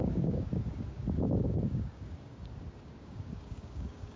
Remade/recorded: remade